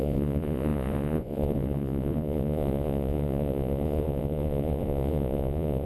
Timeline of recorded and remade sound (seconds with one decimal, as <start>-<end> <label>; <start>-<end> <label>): 0.0-5.9 remade